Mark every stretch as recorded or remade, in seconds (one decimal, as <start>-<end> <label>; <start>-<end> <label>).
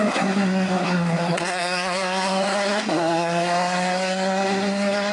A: 0.0-5.1 remade